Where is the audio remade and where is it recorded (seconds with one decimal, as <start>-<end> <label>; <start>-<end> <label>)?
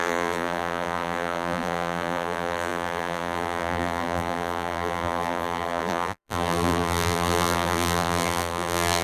0.0-9.0 remade